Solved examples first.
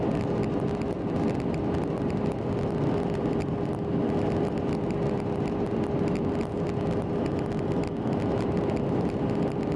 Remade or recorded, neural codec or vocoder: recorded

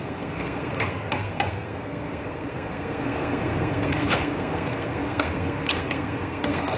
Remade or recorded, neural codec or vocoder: remade, codec, SNAC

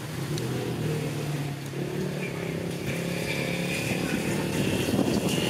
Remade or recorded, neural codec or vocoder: recorded